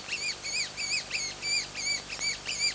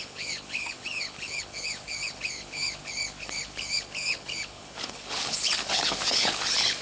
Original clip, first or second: first